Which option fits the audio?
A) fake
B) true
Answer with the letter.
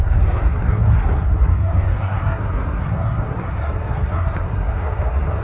A